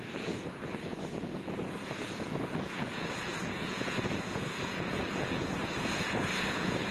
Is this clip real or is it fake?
fake